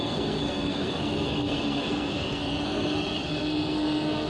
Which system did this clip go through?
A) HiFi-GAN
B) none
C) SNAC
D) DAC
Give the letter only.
C